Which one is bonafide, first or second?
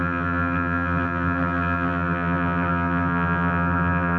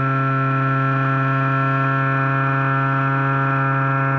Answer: second